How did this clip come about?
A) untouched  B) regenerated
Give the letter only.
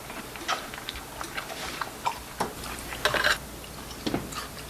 A